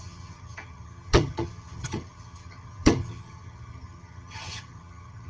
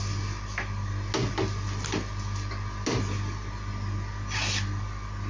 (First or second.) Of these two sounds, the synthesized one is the first